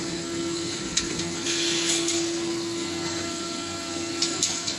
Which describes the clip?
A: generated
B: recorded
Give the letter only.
A